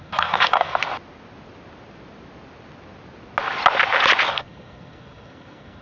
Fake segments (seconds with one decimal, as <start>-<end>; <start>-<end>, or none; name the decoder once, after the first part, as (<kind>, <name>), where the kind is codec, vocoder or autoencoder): 0.0-0.8 (codec, SNAC); 4.3-5.8